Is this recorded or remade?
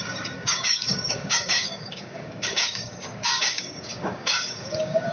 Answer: remade